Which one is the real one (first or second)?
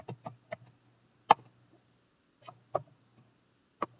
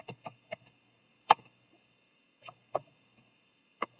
first